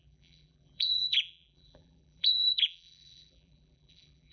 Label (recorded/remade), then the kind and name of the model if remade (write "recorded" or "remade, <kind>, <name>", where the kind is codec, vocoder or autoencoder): remade, vocoder, BigVGAN v2